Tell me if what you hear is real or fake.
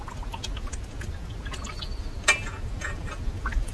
real